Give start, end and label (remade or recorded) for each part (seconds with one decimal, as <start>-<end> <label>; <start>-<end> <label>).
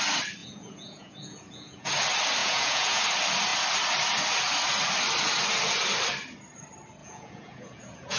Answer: 0.0-0.4 recorded; 0.4-1.9 remade; 1.9-2.4 recorded; 2.4-3.0 remade; 3.0-7.0 recorded; 7.0-8.2 remade